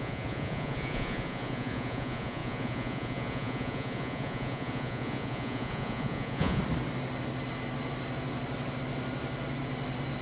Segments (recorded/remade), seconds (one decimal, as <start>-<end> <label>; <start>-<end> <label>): 0.0-6.6 remade; 6.6-10.2 recorded